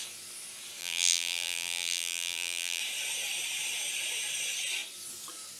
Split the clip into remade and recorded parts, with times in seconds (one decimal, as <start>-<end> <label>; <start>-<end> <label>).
0.0-0.8 recorded; 0.8-2.8 remade; 2.8-5.6 recorded